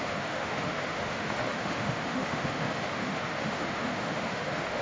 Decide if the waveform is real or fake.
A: fake